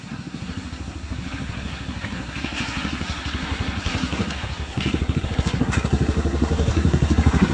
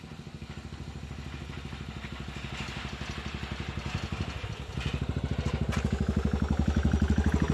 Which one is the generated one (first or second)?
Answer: first